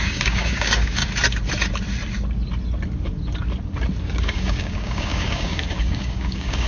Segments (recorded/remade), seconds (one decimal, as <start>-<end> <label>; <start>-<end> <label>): 0.0-1.0 remade; 1.0-4.0 recorded; 4.0-6.7 remade